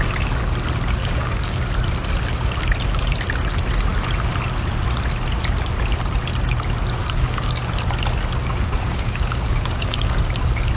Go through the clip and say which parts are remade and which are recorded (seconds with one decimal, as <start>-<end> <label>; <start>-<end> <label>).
0.0-1.0 recorded; 1.0-1.6 remade; 1.6-7.0 recorded; 7.0-7.6 remade; 7.6-8.4 recorded; 8.4-10.2 remade; 10.2-10.8 recorded